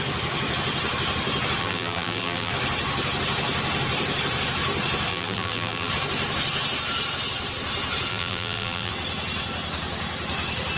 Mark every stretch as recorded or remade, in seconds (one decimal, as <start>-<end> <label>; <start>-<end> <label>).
0.0-1.6 recorded; 1.6-2.5 remade; 2.5-5.1 recorded; 5.1-5.9 remade; 5.9-8.1 recorded; 8.1-8.9 remade; 8.9-10.8 recorded